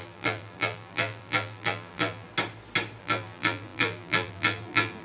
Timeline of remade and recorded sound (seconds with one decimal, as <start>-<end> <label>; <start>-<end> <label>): 0.0-2.3 remade; 2.3-3.0 recorded; 3.0-5.0 remade